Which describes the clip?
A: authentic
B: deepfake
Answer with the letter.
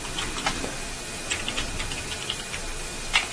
A